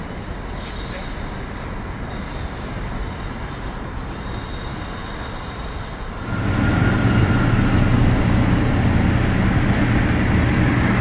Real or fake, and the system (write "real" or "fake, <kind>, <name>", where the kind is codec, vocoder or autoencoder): real